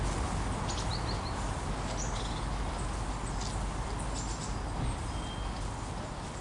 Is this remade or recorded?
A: recorded